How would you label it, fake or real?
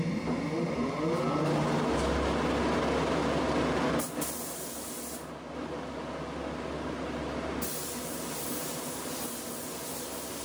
real